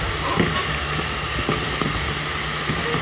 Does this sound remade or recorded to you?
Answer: recorded